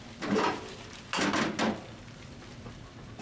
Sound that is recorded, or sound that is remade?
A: recorded